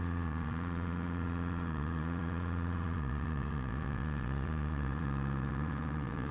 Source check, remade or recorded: remade